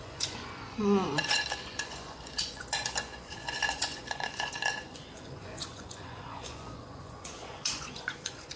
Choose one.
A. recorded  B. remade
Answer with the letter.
B